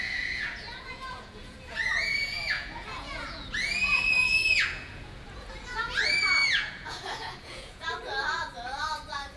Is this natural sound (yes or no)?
no